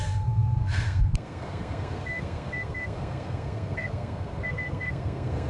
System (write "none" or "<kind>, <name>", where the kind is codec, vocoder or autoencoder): codec, SNAC